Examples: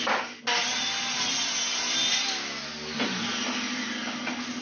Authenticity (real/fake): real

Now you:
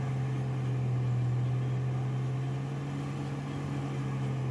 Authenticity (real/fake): real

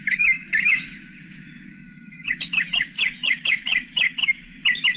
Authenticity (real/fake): fake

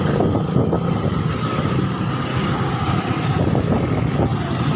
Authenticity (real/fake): real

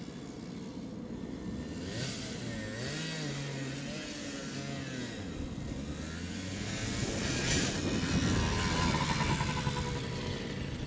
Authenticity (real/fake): real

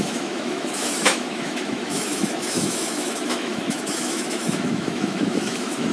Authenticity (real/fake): fake